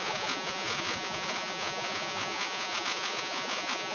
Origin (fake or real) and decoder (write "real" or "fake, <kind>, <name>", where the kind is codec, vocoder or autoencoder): fake, vocoder, Vocos